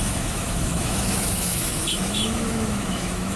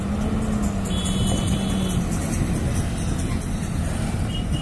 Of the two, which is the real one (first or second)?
second